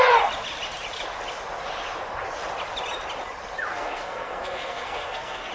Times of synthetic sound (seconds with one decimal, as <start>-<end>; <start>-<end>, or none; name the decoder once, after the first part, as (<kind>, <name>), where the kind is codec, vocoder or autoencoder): 3.7-5.5 (codec, SNAC)